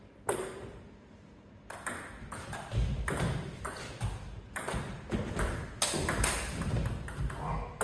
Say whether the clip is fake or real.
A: real